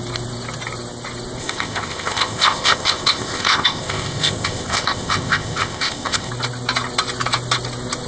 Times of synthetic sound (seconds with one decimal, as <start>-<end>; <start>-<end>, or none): 1.4-6.3